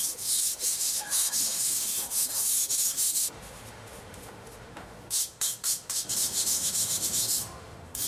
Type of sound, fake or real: fake